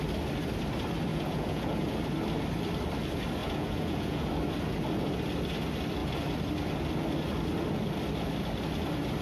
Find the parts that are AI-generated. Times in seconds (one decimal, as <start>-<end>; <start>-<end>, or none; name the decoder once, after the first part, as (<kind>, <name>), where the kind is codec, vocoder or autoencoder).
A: 1.1-2.0 (vocoder, Vocos); 3.4-4.3